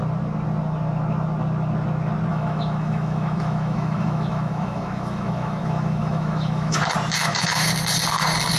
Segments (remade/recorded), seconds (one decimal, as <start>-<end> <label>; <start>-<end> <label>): 0.0-2.3 recorded; 2.3-6.8 remade; 6.8-7.2 recorded; 7.2-7.7 remade; 7.7-8.6 recorded